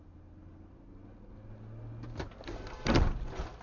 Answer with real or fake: real